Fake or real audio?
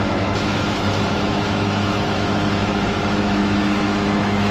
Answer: fake